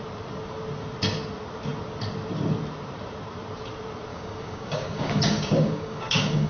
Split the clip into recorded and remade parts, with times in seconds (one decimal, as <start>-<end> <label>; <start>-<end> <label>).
0.0-4.1 recorded; 4.1-6.5 remade